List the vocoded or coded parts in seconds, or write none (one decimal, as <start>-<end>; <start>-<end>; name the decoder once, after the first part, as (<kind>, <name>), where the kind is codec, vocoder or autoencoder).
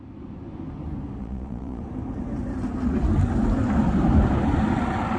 1.2-1.8 (vocoder, Vocos)